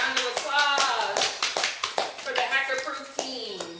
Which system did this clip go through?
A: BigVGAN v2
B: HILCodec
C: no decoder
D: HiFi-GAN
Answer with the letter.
C